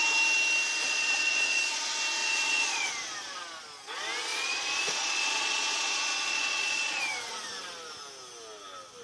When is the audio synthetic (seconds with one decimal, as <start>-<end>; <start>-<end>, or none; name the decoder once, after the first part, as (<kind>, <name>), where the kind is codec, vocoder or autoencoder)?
0.8-1.8 (vocoder, Vocos); 2.2-2.9; 4.3-7.0